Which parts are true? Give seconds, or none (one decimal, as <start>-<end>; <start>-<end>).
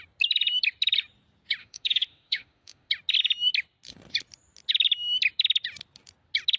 0.0-1.6; 2.9-6.6